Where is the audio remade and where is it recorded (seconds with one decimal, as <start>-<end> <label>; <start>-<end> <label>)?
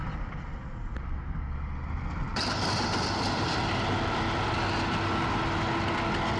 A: 0.0-0.6 remade; 0.6-2.3 recorded; 2.3-3.6 remade; 3.6-6.4 recorded